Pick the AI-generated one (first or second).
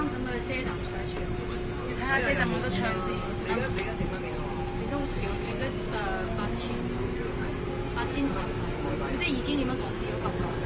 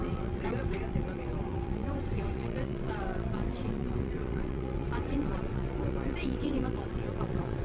second